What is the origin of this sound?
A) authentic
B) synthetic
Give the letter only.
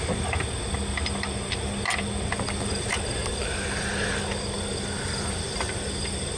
A